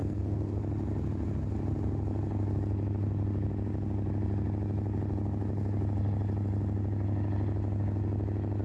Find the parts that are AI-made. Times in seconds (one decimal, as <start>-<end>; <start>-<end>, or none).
0.0-0.6

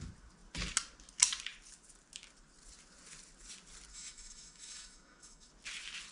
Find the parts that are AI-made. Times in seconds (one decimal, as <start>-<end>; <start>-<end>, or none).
3.9-5.5

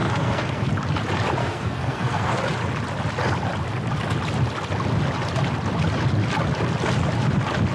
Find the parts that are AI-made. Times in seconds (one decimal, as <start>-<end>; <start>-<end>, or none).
0.0-0.7; 1.4-2.4

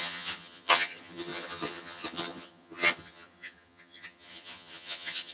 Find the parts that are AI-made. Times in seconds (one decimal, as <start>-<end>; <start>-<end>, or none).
0.0-5.3

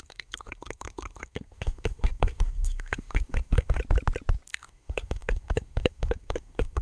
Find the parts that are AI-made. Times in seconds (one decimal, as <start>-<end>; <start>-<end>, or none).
0.0-3.8; 4.5-6.8